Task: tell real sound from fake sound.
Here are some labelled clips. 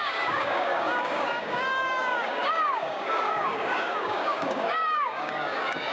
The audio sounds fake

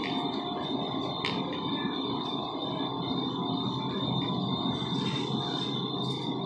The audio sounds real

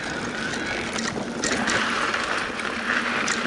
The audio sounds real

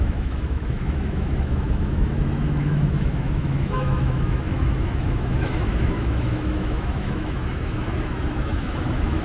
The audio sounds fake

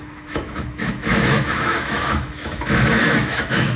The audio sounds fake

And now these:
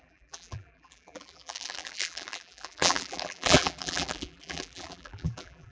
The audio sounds fake